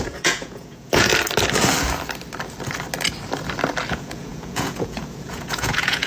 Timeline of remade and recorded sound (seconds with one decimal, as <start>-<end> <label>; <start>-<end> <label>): 0.0-1.1 remade; 1.1-3.9 recorded; 3.9-6.1 remade